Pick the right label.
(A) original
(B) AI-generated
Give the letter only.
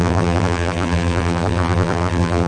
B